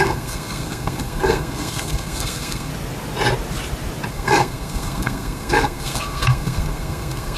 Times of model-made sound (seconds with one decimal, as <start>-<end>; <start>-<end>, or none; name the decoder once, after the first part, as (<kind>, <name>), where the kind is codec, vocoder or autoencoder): 0.0-2.7 (codec, SNAC); 4.1-7.4